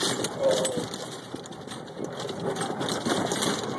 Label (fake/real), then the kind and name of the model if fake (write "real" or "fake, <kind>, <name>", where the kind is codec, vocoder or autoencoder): real